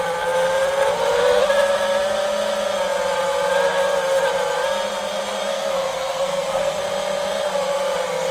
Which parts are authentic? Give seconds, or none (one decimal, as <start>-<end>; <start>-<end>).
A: 0.0-5.5; 6.8-8.3